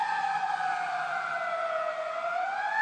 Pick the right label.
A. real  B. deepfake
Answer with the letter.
B